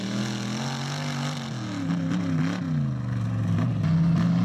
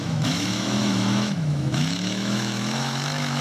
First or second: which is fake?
second